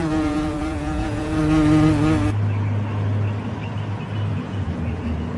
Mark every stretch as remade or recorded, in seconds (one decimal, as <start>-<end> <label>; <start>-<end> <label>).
0.0-1.4 remade; 1.4-4.3 recorded; 4.3-5.4 remade